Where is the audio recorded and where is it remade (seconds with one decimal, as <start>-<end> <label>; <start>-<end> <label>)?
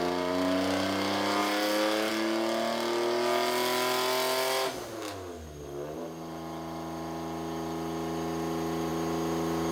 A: 0.0-9.7 recorded